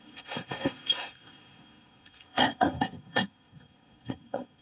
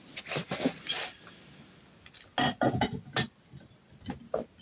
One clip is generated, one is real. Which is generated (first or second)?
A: first